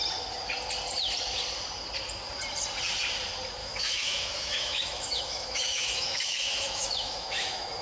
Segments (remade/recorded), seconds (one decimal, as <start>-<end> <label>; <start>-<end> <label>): 0.0-3.6 recorded; 3.6-7.8 remade